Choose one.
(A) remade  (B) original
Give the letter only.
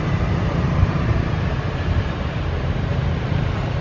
A